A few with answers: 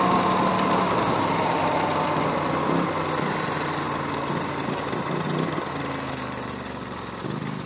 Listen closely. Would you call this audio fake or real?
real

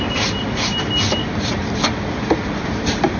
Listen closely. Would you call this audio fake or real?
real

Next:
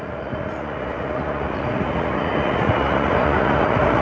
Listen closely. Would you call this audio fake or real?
fake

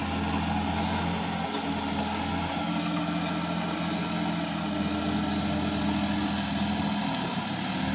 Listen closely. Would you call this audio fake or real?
real